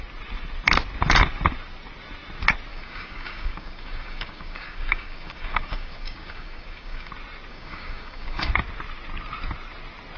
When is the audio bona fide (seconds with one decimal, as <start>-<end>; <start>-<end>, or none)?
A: 0.0-2.7; 7.1-7.5; 8.5-10.2